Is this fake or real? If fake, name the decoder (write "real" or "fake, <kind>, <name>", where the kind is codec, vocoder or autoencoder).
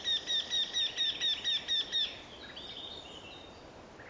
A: real